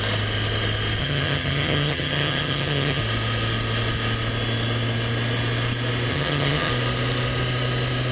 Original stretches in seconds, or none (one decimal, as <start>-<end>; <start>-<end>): 0.0-1.0; 3.0-6.1; 6.7-8.1